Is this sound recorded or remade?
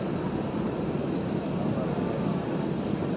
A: recorded